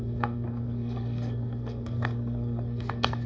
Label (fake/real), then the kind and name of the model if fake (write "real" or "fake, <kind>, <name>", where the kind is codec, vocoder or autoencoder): fake, codec, SNAC